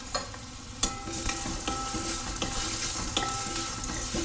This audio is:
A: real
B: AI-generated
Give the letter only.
A